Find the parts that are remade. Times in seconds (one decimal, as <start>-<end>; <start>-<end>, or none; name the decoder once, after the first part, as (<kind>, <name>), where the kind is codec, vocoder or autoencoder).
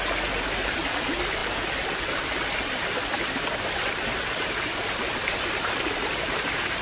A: none